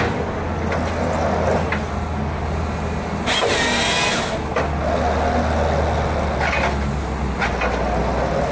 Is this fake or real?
real